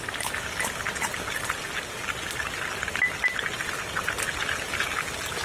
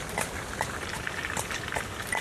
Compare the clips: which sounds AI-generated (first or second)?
second